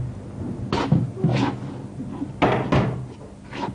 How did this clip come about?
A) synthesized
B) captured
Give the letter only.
B